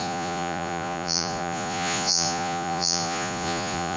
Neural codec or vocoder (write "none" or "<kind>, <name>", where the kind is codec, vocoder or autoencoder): vocoder, Vocos